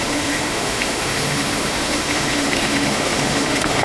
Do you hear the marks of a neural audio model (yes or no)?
yes